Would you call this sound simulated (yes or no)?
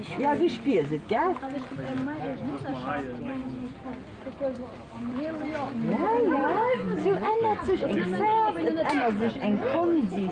no